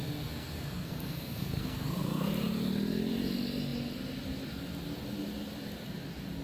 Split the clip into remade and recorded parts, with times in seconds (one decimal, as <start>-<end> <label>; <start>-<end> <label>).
0.0-2.3 remade; 2.3-6.4 recorded